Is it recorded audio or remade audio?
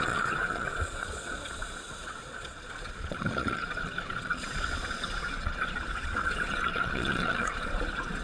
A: remade